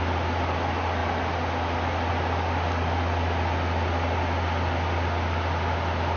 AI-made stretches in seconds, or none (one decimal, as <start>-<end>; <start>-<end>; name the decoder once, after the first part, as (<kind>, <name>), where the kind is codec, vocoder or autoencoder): none